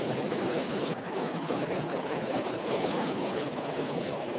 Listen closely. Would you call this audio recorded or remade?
remade